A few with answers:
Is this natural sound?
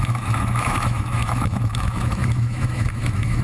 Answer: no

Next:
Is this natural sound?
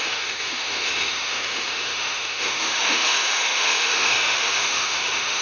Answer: no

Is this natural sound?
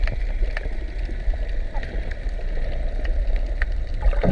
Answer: yes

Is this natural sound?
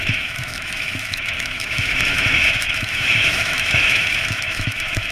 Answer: no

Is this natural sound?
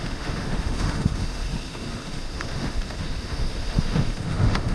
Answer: no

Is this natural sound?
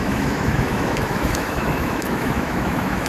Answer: no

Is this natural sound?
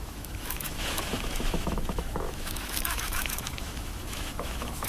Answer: no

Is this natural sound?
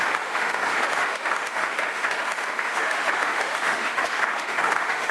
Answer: no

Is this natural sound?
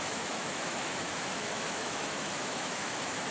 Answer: no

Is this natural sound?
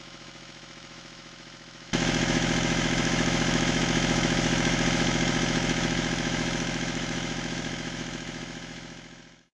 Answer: no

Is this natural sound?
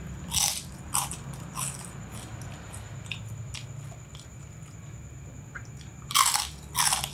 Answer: yes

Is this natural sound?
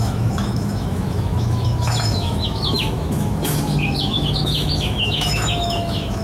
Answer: no